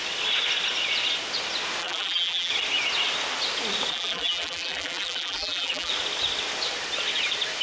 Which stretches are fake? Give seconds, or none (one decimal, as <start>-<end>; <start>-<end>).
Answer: 1.8-2.5; 3.9-5.9